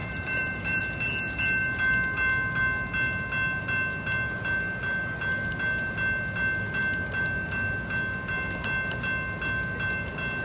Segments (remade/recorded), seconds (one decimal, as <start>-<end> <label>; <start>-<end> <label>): 0.0-0.8 remade; 0.8-10.4 recorded